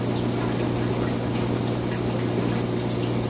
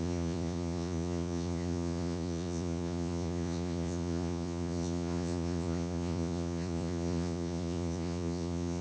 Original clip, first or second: first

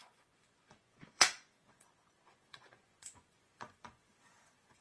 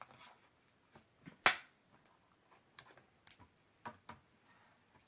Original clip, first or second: second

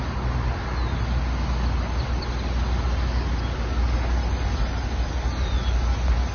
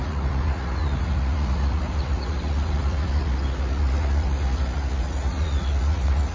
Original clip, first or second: first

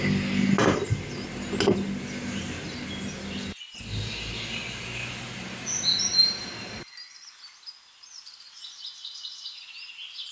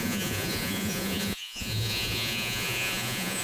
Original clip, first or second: first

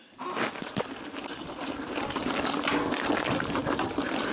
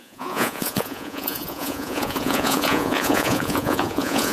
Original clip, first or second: first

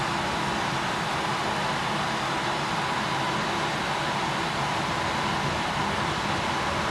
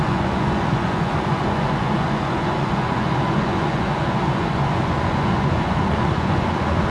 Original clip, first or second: first